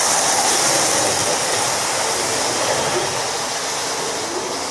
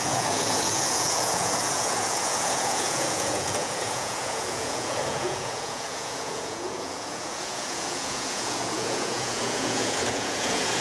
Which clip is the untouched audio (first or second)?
first